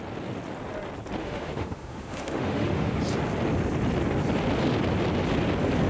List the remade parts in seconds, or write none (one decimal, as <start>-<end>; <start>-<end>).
1.2-3.0

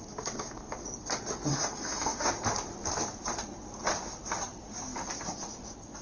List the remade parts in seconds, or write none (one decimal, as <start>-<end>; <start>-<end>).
1.5-2.3

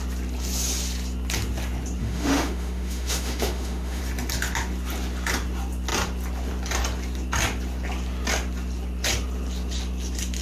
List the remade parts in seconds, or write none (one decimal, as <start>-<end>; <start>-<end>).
2.0-4.0